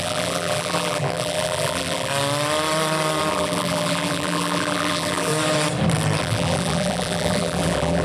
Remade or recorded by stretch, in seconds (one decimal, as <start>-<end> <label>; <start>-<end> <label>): 0.0-2.1 remade; 2.1-3.3 recorded; 3.3-5.3 remade; 5.3-6.2 recorded; 6.2-8.0 remade